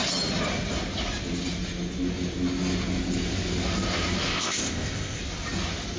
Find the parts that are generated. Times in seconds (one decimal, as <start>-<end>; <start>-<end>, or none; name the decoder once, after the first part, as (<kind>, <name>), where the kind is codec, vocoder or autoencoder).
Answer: 4.3-5.2 (codec, ZipCodec)

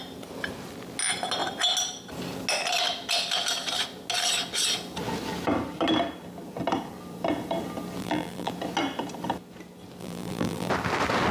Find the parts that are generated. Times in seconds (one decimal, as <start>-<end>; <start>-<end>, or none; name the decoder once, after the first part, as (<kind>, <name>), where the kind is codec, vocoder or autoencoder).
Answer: 8.0-8.5 (vocoder, BigVGAN v2); 10.0-10.7